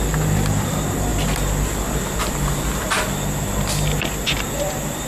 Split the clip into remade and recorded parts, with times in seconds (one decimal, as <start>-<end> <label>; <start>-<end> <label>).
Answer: 0.0-5.1 recorded